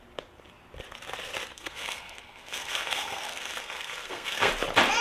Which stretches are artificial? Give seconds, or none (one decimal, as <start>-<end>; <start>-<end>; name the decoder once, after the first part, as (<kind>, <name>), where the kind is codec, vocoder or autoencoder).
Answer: 1.5-4.5 (codec, SNAC)